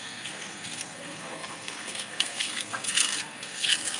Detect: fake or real fake